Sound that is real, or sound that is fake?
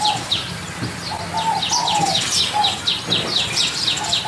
real